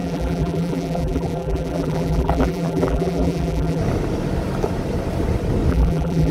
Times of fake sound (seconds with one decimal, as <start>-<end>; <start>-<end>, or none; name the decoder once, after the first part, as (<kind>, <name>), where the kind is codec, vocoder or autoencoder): 0.0-3.8 (vocoder, BigVGAN v2); 5.7-6.3

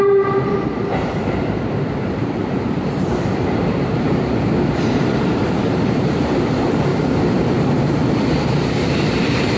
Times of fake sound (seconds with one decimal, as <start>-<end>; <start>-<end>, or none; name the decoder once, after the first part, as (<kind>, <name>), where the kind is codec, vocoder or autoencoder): 0.0-6.9 (vocoder, BigVGAN v2); 7.6-9.6

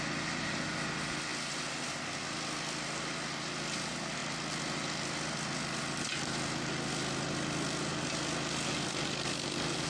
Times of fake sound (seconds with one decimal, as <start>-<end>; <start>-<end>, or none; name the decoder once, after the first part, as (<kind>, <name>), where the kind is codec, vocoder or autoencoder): 1.3-2.1 (vocoder, BigVGAN v2)